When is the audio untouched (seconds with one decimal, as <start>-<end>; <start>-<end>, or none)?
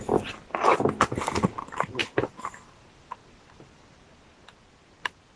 0.0-2.0; 3.6-5.4